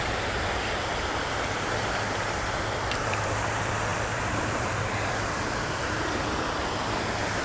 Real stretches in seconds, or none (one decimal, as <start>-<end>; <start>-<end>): none